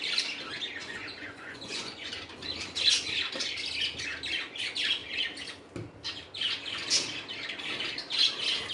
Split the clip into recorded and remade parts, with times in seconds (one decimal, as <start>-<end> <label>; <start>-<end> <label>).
0.0-0.8 recorded; 0.8-2.1 remade; 2.1-8.7 recorded